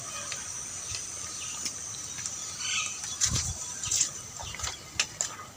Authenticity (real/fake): real